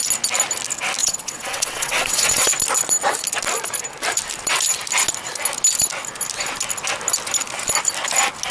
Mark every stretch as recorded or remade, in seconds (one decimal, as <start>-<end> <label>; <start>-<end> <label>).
0.0-1.0 recorded; 1.0-2.5 remade; 2.5-8.5 recorded